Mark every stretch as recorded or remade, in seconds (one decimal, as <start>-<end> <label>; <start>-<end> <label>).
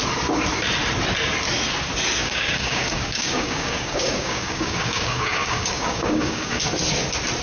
0.0-2.2 recorded; 2.2-6.6 remade; 6.6-7.4 recorded